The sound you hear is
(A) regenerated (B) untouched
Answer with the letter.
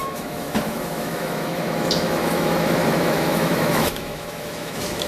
A